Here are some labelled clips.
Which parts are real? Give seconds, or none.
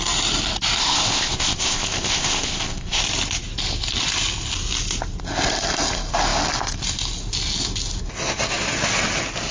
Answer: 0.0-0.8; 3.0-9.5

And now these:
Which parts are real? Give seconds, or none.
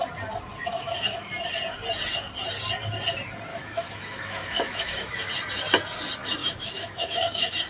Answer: 0.0-0.7; 1.3-3.5; 5.3-6.4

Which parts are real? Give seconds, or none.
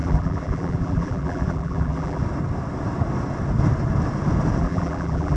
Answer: 2.2-4.6